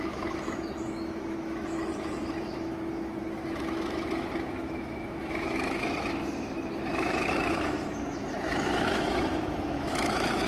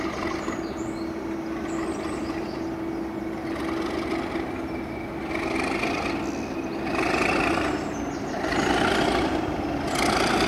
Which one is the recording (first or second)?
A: second